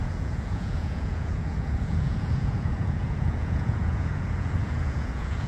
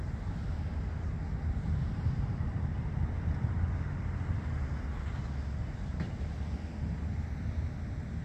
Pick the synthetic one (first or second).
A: first